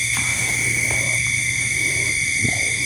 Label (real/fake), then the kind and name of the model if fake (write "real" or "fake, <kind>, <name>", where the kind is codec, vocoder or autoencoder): real